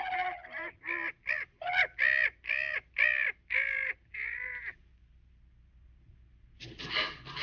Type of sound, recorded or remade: recorded